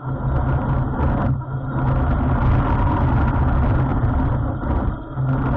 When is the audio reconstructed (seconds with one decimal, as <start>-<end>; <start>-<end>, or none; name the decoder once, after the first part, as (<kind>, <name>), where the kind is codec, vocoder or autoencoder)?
none